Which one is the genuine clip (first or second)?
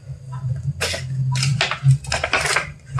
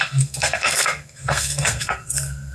first